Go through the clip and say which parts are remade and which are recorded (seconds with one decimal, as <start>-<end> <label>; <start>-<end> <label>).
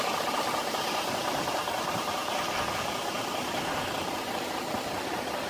0.0-5.5 recorded